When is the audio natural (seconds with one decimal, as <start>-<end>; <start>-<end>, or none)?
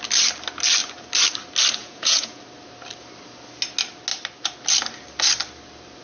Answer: 0.0-1.8; 2.4-6.0